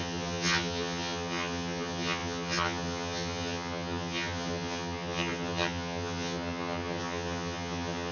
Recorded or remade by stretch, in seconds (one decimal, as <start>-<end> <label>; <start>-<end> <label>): 0.0-8.1 remade